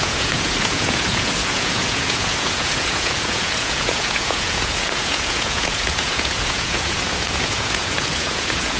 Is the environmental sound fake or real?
fake